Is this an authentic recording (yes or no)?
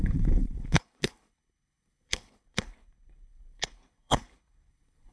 no